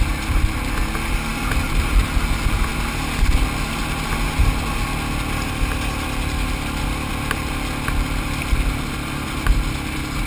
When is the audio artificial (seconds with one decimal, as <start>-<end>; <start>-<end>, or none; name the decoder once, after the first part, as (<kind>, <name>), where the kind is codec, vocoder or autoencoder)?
none